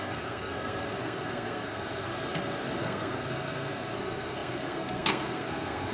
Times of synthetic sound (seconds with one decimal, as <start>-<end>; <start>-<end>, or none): 0.0-2.1; 2.8-5.9